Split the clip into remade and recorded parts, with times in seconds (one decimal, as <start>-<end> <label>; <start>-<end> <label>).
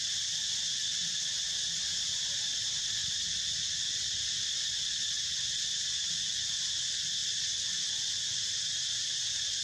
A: 0.0-3.0 recorded; 3.0-5.2 remade; 5.2-7.2 recorded; 7.2-8.1 remade; 8.1-9.6 recorded